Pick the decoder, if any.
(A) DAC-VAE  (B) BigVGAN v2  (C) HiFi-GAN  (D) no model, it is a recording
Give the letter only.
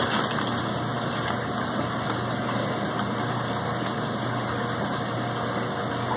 D